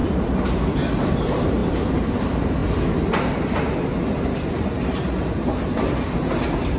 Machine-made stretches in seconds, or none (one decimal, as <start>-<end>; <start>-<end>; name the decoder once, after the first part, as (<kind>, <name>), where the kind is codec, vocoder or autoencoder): 0.0-2.6 (vocoder, BigVGAN v2)